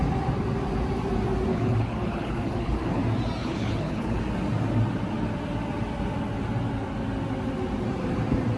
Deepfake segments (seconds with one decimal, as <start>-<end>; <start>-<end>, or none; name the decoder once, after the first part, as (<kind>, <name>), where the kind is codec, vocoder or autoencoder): 1.5-3.0 (codec, HILCodec); 3.4-4.2